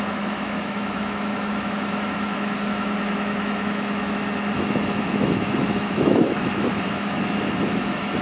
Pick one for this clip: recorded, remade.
remade